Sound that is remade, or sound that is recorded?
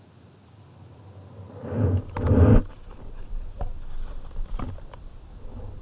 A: recorded